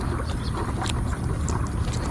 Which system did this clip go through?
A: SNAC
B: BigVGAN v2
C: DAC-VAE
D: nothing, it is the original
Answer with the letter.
D